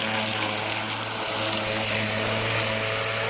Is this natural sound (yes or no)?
yes